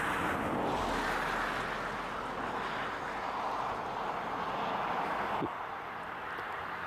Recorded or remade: recorded